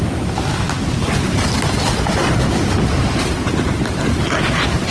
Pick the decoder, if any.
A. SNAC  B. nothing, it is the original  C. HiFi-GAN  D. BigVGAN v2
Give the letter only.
B